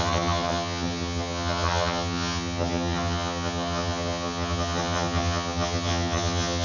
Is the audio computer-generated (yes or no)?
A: yes